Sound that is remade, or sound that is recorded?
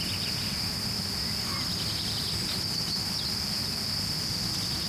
recorded